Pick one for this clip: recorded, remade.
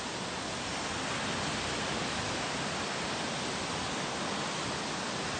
recorded